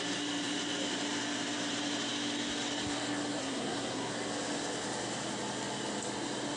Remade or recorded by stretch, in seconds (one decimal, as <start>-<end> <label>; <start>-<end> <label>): 0.0-3.4 recorded; 3.4-4.1 remade; 4.1-6.6 recorded